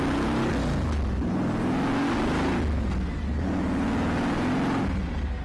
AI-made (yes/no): no